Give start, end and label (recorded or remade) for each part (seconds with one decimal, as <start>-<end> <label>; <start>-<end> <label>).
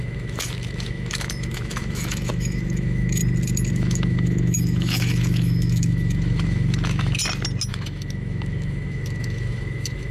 0.0-3.2 remade; 3.2-3.7 recorded; 3.7-7.2 remade; 7.2-7.7 recorded; 7.7-10.1 remade